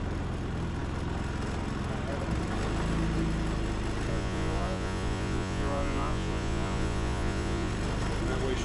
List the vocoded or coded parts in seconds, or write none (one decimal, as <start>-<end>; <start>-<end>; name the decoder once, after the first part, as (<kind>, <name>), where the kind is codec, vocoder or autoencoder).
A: 4.1-7.7 (vocoder, Vocos)